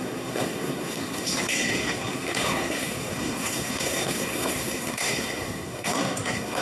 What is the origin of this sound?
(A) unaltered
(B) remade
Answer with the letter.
B